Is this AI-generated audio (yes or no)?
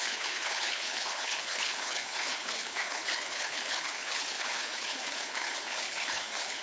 yes